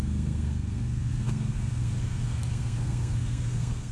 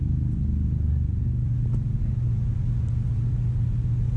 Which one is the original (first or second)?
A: second